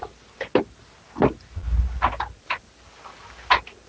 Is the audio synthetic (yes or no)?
no